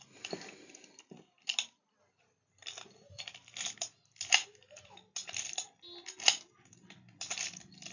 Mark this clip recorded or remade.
recorded